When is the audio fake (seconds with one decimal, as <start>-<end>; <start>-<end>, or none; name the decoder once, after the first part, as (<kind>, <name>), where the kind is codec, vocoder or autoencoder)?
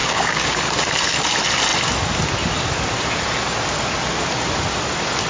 0.0-0.6 (codec, DAC)